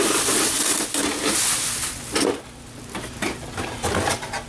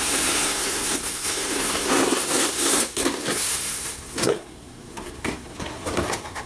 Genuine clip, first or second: first